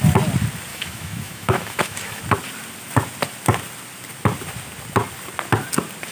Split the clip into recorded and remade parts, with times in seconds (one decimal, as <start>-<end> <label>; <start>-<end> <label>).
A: 0.0-0.7 recorded; 0.7-2.2 remade; 2.2-6.1 recorded